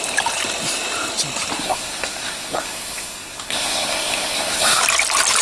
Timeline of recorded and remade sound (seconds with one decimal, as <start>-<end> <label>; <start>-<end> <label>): 0.0-1.6 recorded; 1.6-4.8 remade; 4.8-5.4 recorded